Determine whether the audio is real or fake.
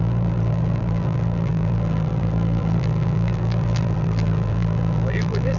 fake